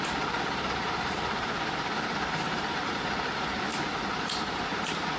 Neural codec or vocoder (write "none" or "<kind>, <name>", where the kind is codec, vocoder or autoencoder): vocoder, BigVGAN v2